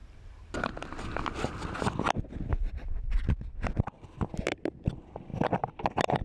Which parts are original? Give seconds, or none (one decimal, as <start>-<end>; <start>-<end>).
0.0-1.5; 5.3-6.2